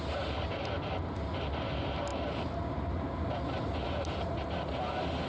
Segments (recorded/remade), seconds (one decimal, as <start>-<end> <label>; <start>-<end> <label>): 0.0-5.3 recorded